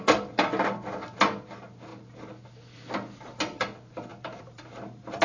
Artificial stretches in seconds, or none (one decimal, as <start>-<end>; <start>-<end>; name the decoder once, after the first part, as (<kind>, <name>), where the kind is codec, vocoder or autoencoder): 4.1-5.2 (vocoder, BigVGAN v2)